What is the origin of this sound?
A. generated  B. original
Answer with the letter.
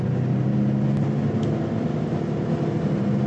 B